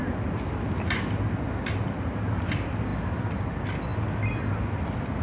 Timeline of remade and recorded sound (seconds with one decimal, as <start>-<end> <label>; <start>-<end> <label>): 0.0-2.9 remade; 2.9-3.5 recorded; 3.5-3.9 remade; 3.9-4.7 recorded; 4.7-5.2 remade